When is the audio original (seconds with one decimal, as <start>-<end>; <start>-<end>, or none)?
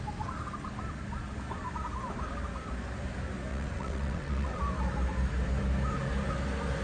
0.0-3.5; 4.6-6.8